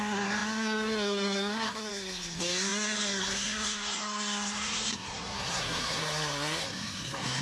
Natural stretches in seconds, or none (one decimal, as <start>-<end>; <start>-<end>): none